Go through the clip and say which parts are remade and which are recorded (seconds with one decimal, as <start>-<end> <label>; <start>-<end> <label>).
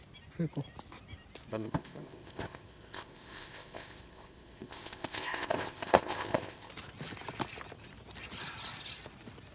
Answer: 0.0-1.5 recorded; 1.5-6.7 remade; 6.7-9.5 recorded